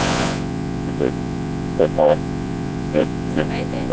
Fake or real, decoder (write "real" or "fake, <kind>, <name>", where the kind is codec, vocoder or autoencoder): fake, vocoder, Vocos